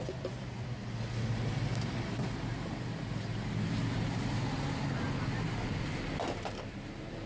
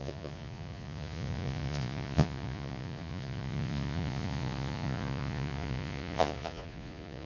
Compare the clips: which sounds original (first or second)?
first